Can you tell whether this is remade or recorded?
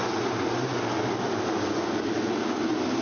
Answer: recorded